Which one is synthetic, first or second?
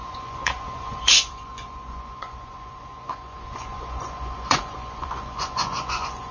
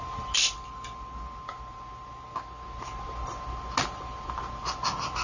first